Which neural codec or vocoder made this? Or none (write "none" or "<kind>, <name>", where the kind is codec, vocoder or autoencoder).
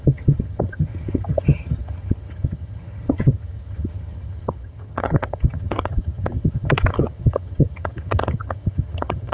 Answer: vocoder, HiFi-GAN